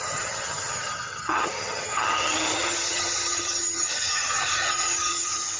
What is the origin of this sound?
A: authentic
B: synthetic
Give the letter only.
B